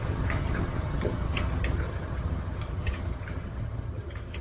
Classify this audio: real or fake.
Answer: fake